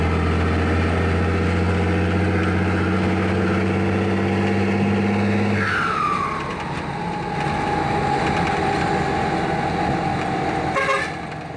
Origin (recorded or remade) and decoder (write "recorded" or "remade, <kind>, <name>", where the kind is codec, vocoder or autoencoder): recorded